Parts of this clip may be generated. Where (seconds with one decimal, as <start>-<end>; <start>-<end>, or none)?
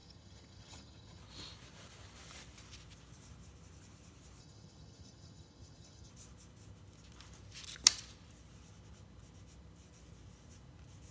0.0-1.2; 4.4-6.1